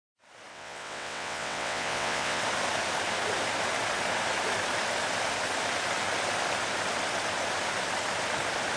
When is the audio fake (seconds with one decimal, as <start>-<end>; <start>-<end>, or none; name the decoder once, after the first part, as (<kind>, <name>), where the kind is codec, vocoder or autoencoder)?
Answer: 0.5-2.4 (vocoder, WaveNeXt)